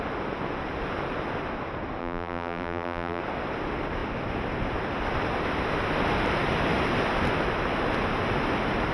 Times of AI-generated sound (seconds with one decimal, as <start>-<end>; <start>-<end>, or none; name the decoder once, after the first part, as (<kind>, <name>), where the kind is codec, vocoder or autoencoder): 2.0-3.2 (vocoder, BigVGAN v2)